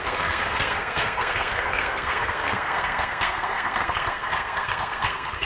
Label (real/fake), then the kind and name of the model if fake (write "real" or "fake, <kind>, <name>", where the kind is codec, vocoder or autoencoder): fake, codec, SNAC